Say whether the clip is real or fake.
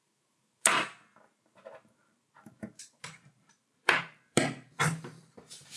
fake